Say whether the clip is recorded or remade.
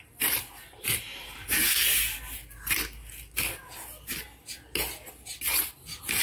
recorded